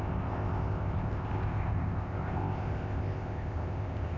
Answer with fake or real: fake